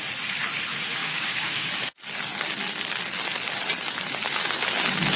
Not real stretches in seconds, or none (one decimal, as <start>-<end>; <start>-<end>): 1.0-1.7